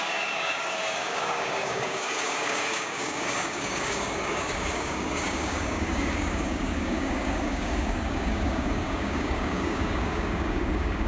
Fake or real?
fake